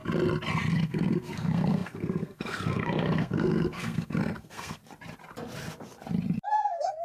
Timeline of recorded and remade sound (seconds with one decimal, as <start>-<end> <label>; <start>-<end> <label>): 0.0-0.7 recorded; 0.7-4.8 remade; 4.8-6.5 recorded; 6.5-7.0 remade